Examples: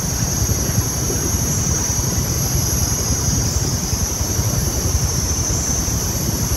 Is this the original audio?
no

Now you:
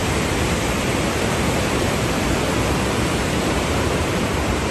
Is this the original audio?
no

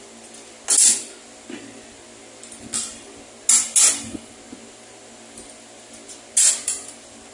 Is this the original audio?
yes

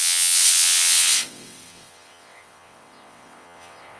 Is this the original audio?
no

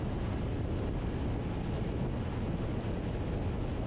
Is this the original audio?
yes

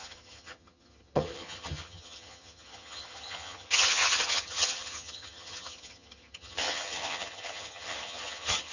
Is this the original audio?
no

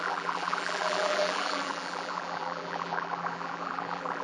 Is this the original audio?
no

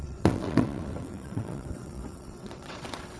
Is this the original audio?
no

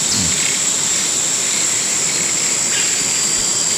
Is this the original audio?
yes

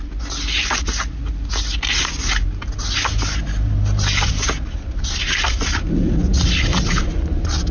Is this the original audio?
yes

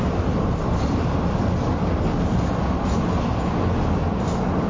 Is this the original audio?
yes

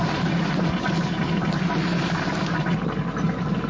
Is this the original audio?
yes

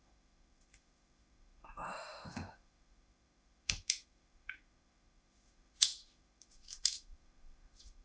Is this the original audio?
no